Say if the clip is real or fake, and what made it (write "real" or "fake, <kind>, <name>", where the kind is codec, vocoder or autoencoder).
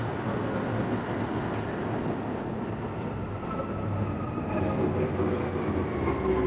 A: real